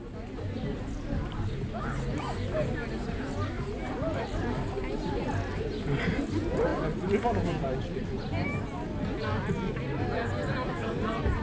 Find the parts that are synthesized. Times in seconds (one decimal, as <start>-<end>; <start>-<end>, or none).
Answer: none